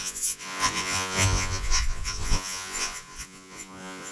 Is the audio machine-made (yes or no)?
yes